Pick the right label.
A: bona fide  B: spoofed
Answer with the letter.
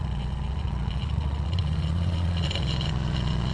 B